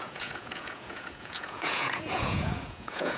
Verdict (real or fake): fake